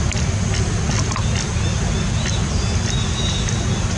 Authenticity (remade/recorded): recorded